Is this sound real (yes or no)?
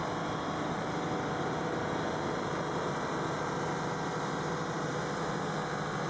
yes